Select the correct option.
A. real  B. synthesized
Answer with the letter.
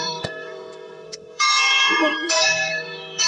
B